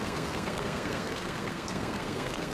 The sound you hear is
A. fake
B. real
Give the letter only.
A